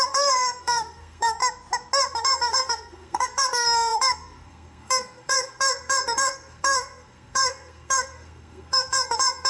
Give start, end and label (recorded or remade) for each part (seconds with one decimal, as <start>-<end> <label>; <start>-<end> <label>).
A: 0.0-1.4 remade; 1.4-2.2 recorded; 2.2-9.5 remade